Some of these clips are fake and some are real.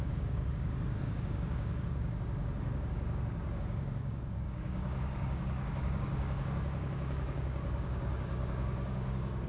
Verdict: fake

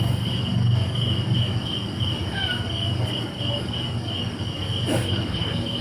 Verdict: fake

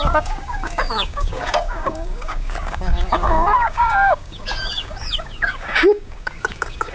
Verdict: fake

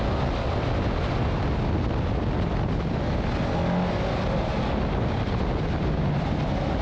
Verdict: real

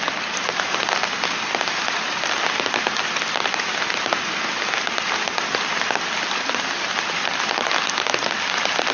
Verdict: real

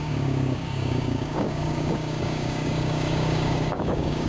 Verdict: fake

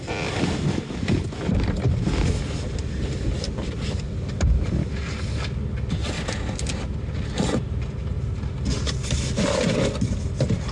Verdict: real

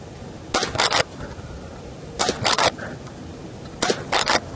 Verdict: real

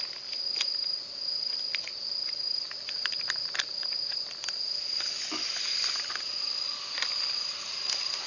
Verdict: real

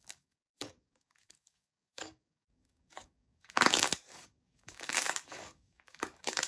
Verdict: fake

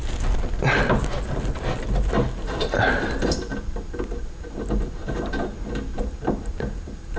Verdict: real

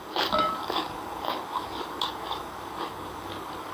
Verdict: fake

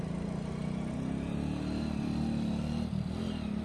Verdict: real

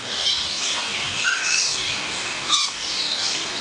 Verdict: fake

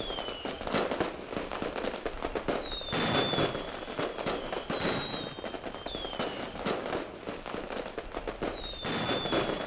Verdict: real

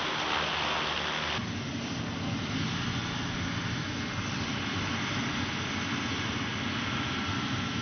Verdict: real